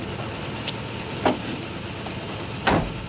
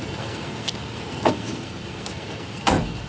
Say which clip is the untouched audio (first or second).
first